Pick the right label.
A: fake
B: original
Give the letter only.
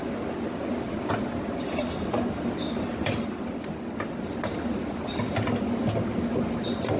B